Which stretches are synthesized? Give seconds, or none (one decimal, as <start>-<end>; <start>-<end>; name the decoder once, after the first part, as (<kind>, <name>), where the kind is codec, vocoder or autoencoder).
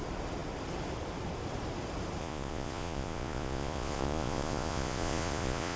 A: 2.2-5.8 (vocoder, Vocos)